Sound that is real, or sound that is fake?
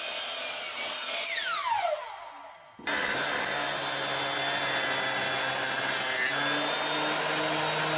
real